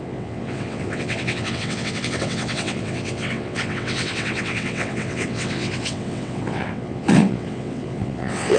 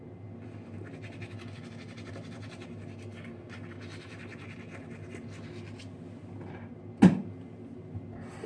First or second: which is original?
second